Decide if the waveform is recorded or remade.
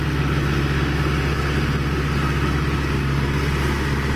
recorded